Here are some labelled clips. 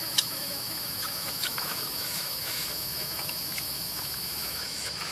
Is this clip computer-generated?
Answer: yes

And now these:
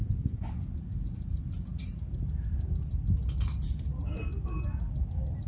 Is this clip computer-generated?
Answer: no